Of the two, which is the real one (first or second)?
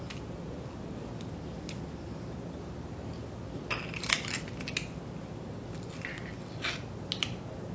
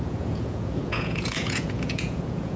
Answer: first